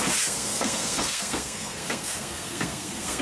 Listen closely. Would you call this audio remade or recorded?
remade